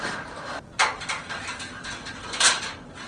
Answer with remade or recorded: recorded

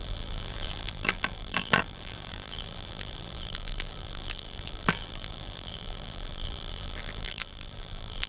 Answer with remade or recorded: remade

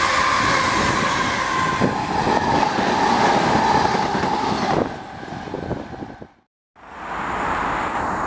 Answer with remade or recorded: recorded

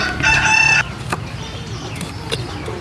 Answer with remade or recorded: recorded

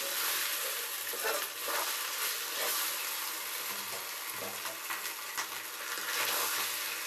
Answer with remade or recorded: recorded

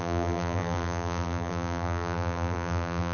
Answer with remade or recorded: remade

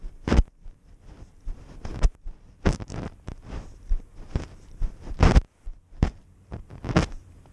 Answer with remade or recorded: remade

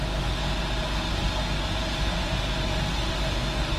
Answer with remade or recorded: recorded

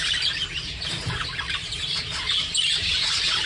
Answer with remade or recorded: remade